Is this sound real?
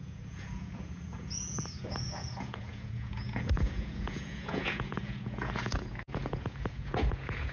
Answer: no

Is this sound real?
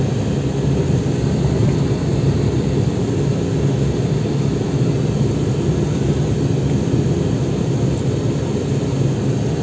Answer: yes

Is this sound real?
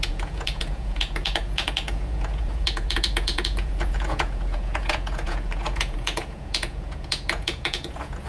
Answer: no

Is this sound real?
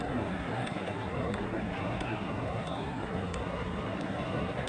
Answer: no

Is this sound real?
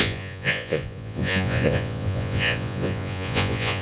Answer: no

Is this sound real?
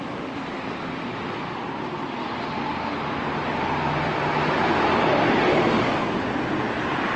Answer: yes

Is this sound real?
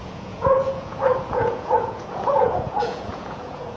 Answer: no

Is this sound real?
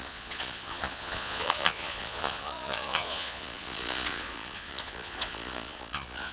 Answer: no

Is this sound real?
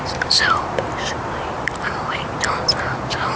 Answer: yes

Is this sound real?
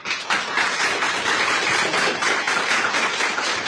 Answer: yes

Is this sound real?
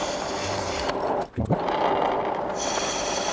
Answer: yes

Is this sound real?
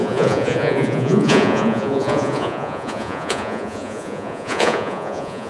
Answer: no